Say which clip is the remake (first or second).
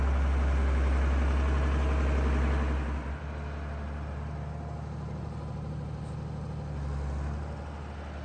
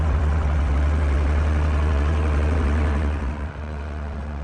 second